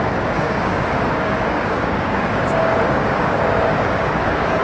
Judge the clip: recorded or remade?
remade